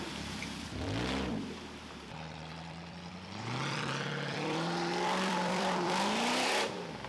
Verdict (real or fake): fake